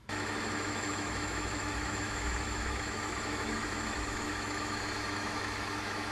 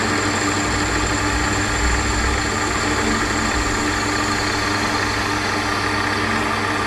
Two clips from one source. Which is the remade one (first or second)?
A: first